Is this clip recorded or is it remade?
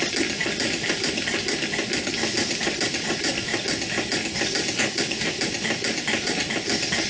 recorded